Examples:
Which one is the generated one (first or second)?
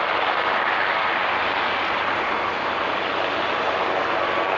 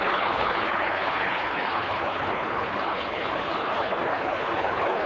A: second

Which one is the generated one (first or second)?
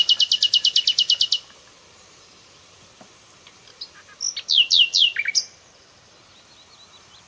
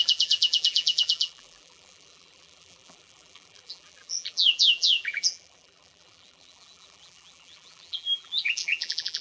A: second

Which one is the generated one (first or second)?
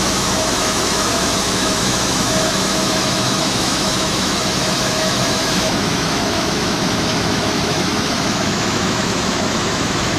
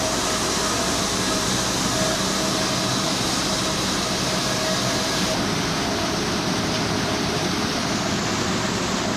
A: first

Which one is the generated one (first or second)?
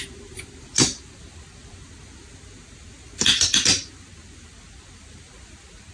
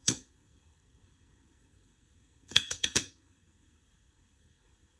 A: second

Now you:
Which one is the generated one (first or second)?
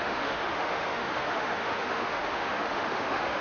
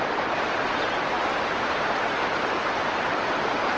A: first